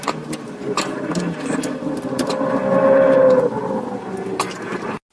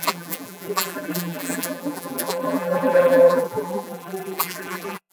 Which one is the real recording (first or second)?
first